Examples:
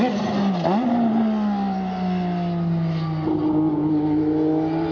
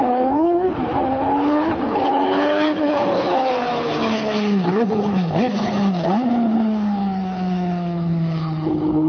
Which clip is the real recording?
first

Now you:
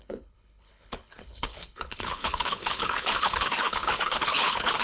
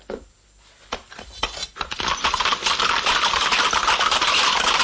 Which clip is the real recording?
second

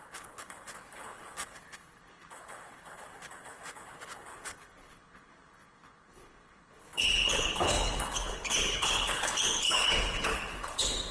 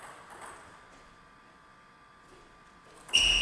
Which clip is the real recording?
second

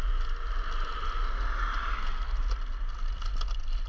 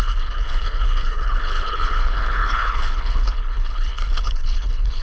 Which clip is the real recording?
first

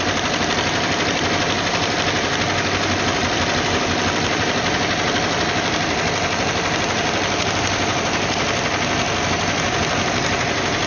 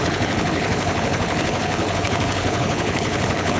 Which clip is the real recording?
first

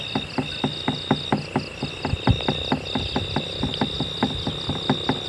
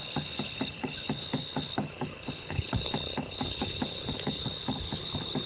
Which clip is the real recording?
first